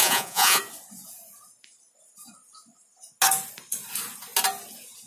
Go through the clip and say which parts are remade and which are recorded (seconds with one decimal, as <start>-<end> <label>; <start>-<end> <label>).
0.0-0.6 remade; 0.6-5.1 recorded

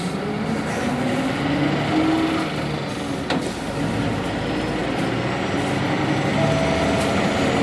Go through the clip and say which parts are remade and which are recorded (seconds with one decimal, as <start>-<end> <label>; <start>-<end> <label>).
0.0-7.6 recorded

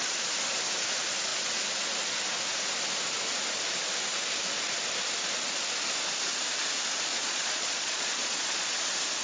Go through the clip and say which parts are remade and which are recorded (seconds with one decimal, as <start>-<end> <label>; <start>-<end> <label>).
0.0-7.1 recorded; 7.1-8.7 remade; 8.7-9.2 recorded

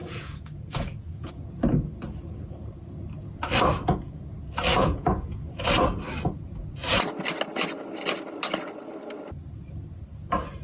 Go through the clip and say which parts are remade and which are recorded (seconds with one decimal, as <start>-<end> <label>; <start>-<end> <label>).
0.0-1.3 remade; 1.3-4.7 recorded; 4.7-5.5 remade; 5.5-10.6 recorded

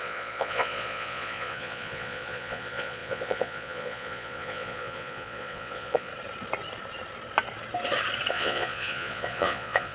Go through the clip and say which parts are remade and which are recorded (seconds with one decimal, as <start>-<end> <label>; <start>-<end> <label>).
0.0-6.1 remade; 6.1-8.3 recorded; 8.3-9.9 remade

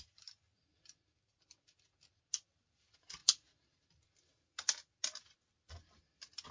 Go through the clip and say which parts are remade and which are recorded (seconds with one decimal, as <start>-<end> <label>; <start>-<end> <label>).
0.0-6.5 recorded

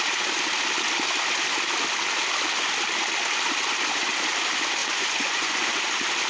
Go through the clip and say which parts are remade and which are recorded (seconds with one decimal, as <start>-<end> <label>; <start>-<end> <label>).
0.0-4.8 recorded; 4.8-5.7 remade; 5.7-6.3 recorded